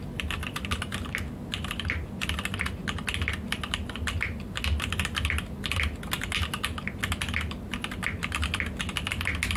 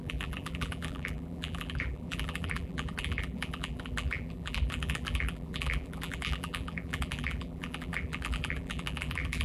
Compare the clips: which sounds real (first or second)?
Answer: first